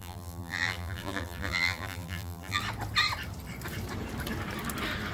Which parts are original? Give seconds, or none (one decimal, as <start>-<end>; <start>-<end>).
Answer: 2.6-5.1